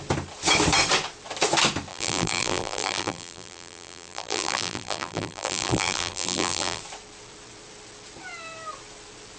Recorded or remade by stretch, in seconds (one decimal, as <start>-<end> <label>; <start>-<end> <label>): 0.0-1.9 recorded; 1.9-6.8 remade; 6.8-9.4 recorded